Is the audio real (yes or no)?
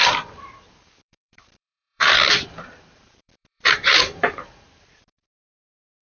no